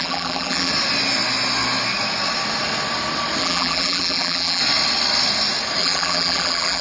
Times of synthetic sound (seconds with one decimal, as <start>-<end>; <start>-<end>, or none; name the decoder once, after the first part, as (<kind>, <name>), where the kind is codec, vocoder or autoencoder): 0.0-0.7 (vocoder, BigVGAN v2); 3.4-4.6; 5.8-6.8